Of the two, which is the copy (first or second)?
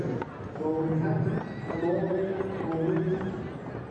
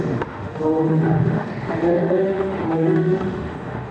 second